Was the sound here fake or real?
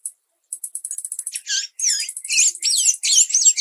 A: real